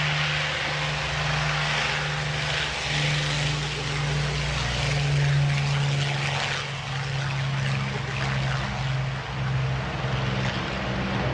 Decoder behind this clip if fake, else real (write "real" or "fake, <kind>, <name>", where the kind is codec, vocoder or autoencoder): real